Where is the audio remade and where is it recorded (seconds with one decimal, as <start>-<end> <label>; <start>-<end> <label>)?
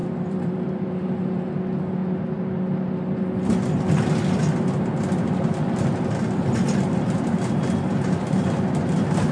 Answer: 0.0-1.1 remade; 1.1-2.0 recorded; 2.0-2.6 remade; 2.6-9.3 recorded